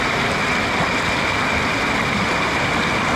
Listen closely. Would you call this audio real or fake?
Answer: real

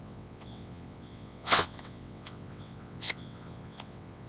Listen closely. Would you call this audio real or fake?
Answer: fake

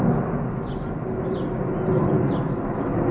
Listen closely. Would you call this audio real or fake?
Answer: real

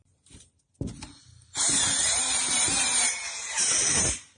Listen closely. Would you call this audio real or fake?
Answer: fake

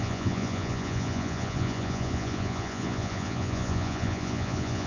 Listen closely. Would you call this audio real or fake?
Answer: fake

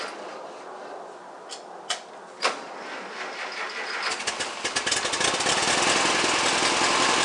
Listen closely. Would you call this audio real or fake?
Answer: real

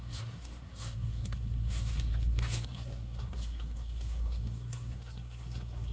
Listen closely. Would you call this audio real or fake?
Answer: fake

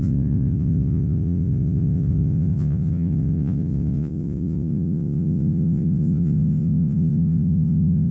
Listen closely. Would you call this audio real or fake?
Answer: fake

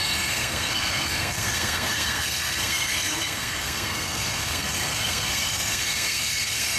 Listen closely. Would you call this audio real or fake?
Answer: fake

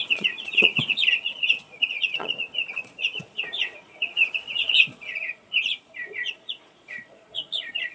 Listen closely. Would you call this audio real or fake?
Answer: fake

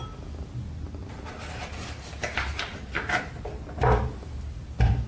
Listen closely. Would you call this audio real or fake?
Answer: real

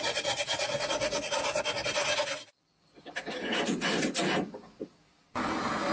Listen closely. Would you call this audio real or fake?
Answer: real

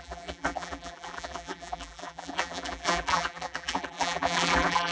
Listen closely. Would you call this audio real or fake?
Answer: fake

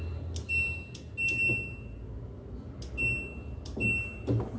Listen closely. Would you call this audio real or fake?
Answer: real